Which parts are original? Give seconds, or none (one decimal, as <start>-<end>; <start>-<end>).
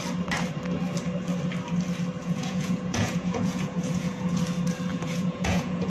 0.0-2.2; 4.4-4.9